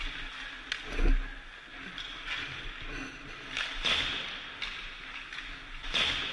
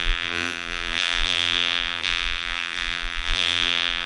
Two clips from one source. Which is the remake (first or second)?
second